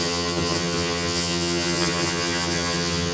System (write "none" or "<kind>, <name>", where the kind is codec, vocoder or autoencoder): vocoder, HiFi-GAN